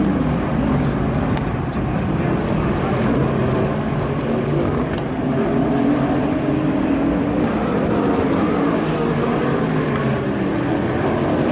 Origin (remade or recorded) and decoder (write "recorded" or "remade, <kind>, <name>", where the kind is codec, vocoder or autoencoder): recorded